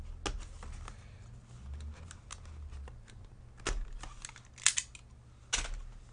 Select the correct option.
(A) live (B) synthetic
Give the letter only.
A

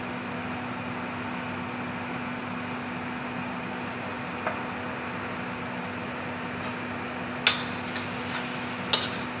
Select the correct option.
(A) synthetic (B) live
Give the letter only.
B